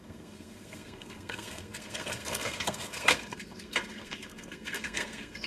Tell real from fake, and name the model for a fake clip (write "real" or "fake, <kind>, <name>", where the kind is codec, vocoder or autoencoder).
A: fake, codec, SNAC